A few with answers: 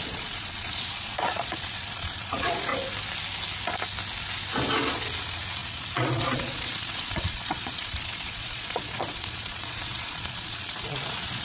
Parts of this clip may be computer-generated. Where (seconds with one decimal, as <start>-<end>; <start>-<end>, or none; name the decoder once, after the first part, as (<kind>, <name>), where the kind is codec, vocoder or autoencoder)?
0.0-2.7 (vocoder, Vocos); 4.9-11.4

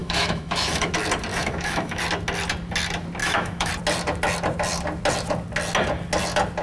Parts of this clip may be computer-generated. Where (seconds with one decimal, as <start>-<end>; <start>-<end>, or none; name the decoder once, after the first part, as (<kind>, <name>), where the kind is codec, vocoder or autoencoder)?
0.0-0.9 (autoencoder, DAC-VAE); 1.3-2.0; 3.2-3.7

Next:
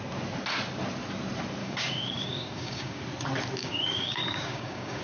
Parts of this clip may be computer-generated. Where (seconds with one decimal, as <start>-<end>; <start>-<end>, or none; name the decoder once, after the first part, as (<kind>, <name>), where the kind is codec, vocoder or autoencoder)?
1.6-3.0 (codec, DAC); 3.6-5.0

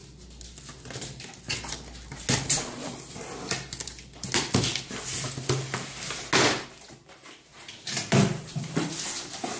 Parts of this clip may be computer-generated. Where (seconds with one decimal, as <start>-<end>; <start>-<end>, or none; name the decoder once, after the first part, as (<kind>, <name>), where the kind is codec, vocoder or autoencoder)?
none

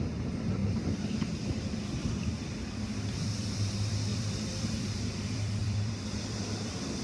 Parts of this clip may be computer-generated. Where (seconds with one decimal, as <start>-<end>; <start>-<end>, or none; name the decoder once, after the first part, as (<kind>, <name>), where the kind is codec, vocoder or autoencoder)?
0.0-0.6 (vocoder, BigVGAN v2); 2.9-7.0

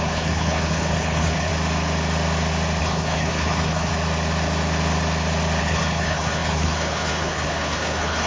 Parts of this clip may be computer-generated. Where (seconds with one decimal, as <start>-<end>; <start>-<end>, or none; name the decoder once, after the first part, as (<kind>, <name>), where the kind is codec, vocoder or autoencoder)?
0.0-1.5 (codec, HILCodec); 2.8-3.9; 5.6-8.3

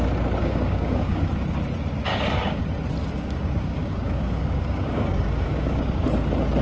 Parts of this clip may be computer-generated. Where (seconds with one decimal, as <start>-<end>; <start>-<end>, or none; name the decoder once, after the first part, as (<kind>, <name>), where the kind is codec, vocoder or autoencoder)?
0.4-1.3 (codec, DAC); 2.1-2.6; 3.0-6.0